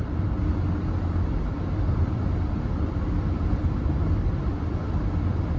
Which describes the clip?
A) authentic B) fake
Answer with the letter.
B